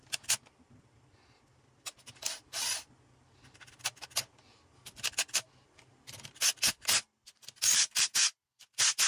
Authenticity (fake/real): real